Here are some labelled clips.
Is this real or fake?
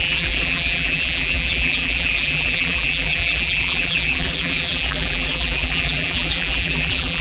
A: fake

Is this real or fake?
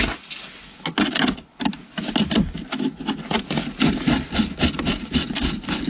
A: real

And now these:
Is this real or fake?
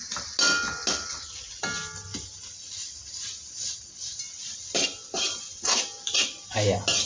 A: real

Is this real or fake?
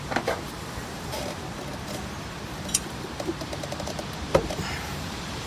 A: fake